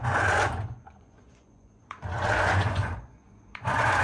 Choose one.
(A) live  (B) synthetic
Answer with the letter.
B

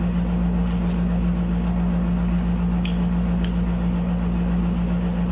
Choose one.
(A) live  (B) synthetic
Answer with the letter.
A